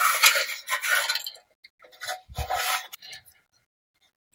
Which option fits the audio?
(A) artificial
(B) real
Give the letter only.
B